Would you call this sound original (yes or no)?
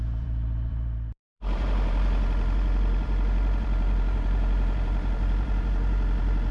no